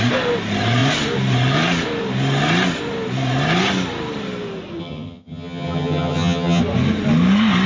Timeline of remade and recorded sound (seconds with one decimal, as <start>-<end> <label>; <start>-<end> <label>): 0.0-4.8 recorded; 4.8-6.6 remade; 6.6-7.7 recorded

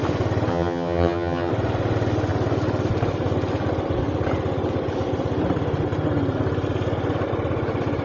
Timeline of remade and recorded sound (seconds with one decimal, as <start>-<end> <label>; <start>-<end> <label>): 0.0-0.5 recorded; 0.5-1.5 remade; 1.5-8.0 recorded

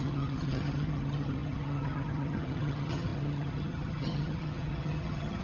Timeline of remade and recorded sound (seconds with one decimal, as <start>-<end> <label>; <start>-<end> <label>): 0.0-5.4 remade

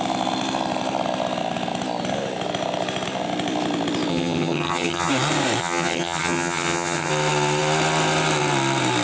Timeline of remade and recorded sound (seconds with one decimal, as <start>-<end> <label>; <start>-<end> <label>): 0.0-4.1 recorded; 4.1-5.1 remade; 5.1-5.6 recorded; 5.6-7.1 remade; 7.1-9.0 recorded